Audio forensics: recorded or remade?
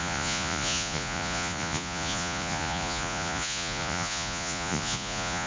remade